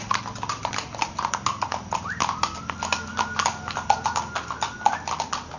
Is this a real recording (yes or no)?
yes